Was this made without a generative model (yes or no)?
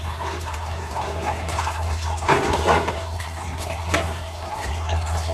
no